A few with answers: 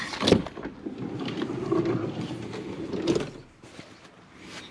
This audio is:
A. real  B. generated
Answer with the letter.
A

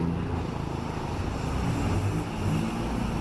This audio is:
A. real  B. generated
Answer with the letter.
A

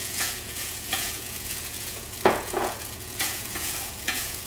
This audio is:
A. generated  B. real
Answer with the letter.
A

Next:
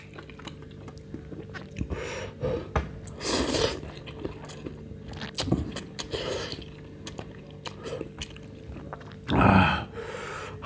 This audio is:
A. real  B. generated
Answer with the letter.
A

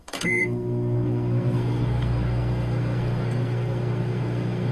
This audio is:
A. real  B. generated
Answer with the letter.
B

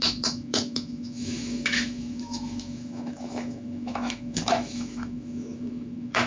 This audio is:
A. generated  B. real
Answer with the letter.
A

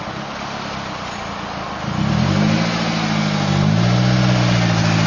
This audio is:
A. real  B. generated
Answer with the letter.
A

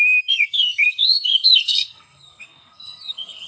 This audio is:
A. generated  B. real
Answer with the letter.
A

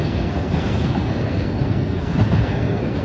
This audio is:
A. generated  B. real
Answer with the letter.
A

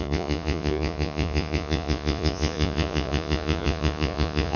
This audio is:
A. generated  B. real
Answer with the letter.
A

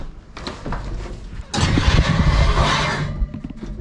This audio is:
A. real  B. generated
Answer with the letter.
A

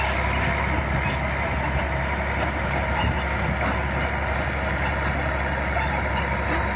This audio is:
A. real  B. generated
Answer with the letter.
A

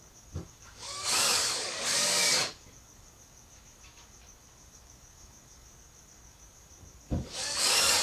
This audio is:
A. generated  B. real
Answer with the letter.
A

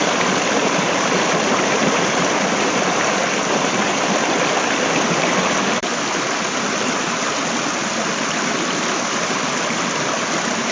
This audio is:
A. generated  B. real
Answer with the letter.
A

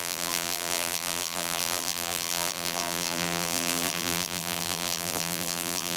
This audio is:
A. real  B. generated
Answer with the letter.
B